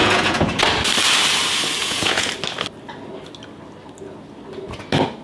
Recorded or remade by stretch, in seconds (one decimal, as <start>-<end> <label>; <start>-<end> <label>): 0.0-0.6 remade; 0.6-1.8 recorded; 1.8-2.3 remade; 2.3-5.2 recorded

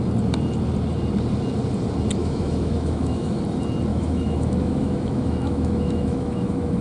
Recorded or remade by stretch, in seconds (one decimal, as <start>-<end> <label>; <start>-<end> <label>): 0.0-2.2 recorded; 2.2-3.4 remade; 3.4-3.9 recorded; 3.9-6.8 remade